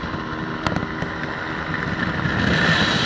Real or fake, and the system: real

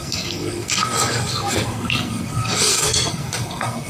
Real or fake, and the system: fake, codec, SNAC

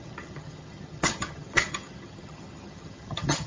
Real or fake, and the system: fake, vocoder, HiFi-GAN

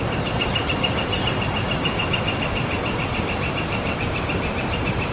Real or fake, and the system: real